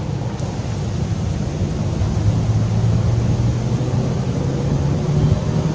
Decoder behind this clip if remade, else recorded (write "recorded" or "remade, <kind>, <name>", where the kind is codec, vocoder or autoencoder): recorded